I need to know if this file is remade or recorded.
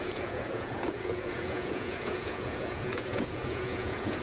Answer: remade